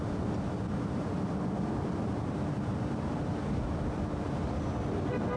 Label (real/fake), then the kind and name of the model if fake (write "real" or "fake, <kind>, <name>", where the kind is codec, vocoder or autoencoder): real